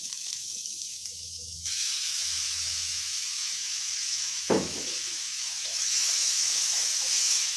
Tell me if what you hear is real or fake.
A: fake